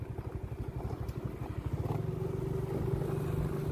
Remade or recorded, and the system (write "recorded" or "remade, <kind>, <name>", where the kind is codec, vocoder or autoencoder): recorded